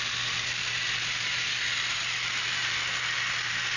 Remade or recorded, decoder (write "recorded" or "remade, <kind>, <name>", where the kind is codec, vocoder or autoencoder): recorded